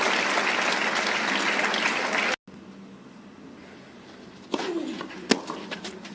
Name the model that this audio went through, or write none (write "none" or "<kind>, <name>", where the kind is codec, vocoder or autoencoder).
none